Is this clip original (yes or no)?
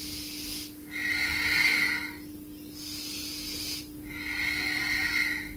yes